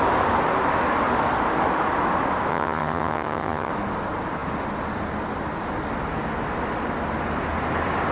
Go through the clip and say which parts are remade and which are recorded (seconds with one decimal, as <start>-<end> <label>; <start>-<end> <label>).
0.0-2.5 recorded; 2.5-3.7 remade; 3.7-8.1 recorded